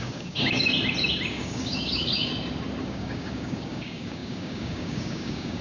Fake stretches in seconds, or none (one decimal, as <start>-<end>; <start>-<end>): 0.0-0.7; 1.3-2.3; 2.8-5.6